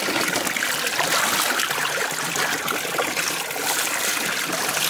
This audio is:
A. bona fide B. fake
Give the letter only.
A